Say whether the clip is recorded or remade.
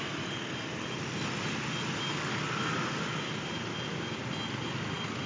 recorded